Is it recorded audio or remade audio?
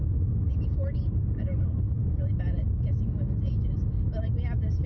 recorded